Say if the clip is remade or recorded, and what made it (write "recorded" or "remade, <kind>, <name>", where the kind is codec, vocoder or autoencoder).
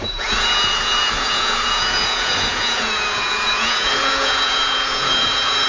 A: remade, vocoder, Vocos